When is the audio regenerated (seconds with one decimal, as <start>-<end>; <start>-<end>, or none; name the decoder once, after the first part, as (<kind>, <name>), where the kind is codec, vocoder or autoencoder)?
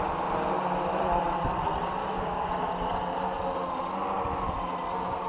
2.0-2.5 (codec, DAC)